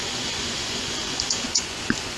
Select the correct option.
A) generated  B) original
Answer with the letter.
A